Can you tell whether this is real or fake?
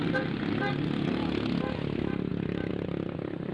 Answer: real